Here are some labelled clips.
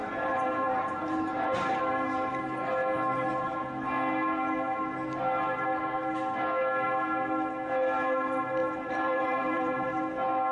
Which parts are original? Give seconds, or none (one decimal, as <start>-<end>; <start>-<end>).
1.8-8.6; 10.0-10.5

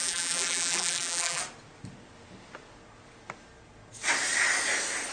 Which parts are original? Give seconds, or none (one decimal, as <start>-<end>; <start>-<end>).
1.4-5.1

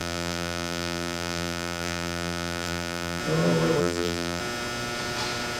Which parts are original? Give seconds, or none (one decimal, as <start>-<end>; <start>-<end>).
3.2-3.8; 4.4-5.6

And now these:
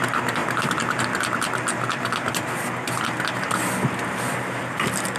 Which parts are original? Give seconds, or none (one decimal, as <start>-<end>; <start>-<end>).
0.0-5.2

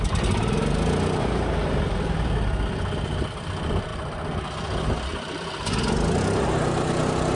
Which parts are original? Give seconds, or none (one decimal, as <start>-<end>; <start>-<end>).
0.0-7.3